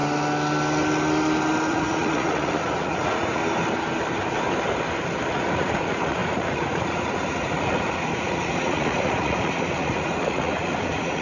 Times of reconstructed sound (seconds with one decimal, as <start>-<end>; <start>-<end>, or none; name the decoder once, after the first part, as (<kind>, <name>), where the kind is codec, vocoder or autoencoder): 1.7-3.4 (vocoder, Vocos); 5.3-11.2